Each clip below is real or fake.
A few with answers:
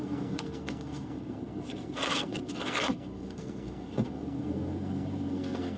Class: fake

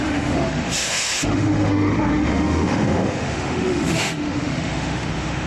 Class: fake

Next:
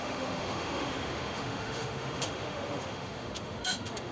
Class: fake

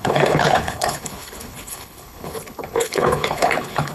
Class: fake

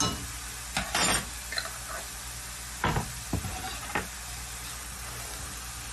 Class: real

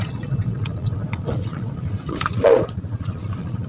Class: fake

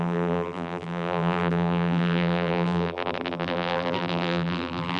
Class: fake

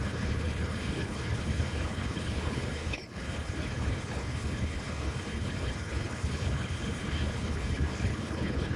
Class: fake